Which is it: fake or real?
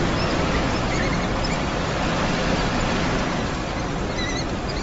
real